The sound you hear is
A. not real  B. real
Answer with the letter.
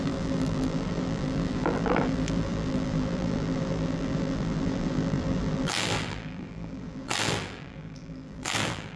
A